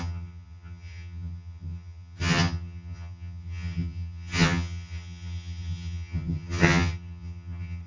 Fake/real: fake